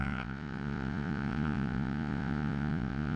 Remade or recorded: remade